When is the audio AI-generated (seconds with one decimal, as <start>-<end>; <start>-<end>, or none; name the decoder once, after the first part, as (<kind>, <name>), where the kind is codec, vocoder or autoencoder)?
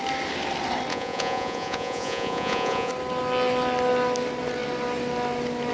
0.9-2.9 (vocoder, Vocos)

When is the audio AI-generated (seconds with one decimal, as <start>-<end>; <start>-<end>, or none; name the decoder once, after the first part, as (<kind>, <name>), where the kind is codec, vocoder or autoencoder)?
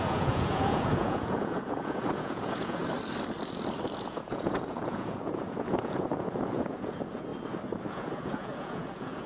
0.0-2.8 (vocoder, Vocos); 4.0-7.3; 7.9-9.3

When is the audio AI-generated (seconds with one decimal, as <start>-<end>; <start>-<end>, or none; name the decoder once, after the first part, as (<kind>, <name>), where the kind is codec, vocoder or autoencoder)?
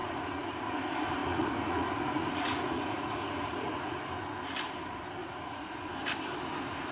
0.0-0.6 (vocoder, Vocos); 1.2-4.0; 5.2-5.8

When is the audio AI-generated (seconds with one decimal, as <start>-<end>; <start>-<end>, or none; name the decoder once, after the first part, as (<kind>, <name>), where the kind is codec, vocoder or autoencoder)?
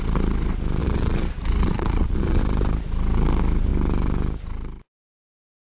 0.8-2.4 (vocoder, Vocos)